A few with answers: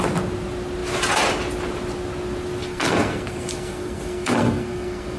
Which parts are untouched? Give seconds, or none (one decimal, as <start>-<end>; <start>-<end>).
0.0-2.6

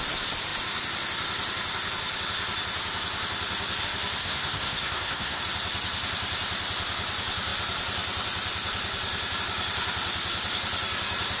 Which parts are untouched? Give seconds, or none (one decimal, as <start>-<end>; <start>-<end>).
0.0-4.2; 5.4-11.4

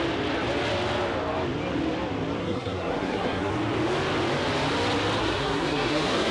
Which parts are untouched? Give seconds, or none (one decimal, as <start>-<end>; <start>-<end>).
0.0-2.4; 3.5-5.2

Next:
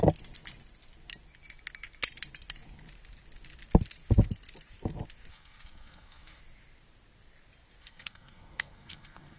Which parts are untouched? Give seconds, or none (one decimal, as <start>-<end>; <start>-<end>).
0.0-5.3; 6.4-7.8

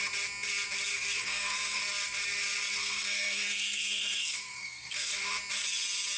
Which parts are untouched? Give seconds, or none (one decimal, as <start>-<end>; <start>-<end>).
0.0-0.9; 1.8-2.8; 5.1-6.2

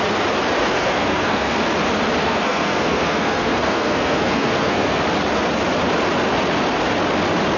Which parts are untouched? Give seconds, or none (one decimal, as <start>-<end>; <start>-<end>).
0.0-0.6; 1.6-2.2; 5.0-7.6

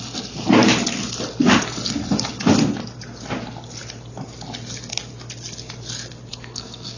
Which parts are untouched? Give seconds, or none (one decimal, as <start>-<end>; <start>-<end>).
0.0-6.3

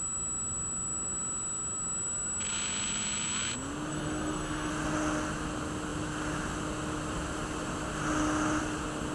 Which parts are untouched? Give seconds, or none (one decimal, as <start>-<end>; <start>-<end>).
0.0-3.9; 4.7-9.1